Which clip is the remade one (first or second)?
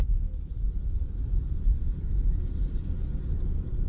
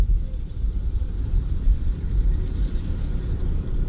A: second